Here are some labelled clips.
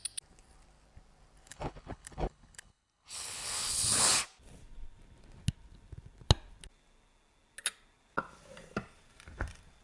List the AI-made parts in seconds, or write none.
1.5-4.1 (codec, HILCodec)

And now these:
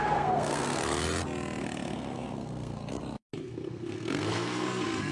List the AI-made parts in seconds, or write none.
0.0-0.8 (codec, SNAC); 1.6-2.8; 3.4-5.1

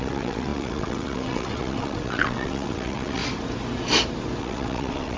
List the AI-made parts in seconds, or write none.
0.0-3.2 (vocoder, WaveNeXt); 4.4-5.2